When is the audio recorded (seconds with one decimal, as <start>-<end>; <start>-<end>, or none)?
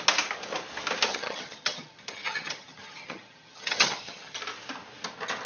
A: 0.0-1.1; 4.4-5.5